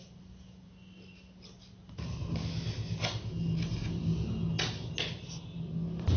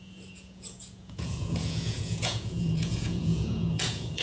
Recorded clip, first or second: first